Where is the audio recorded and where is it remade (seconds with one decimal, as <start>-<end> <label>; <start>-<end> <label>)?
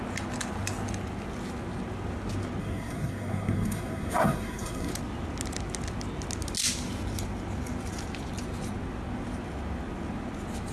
0.0-2.6 recorded; 2.6-4.9 remade; 4.9-10.7 recorded